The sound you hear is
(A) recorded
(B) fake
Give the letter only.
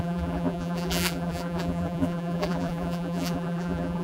B